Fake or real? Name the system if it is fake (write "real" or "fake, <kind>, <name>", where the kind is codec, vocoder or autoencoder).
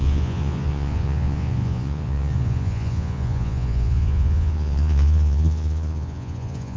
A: fake, vocoder, Vocos